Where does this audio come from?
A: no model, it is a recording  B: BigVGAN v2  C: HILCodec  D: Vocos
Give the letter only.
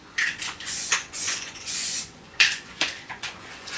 D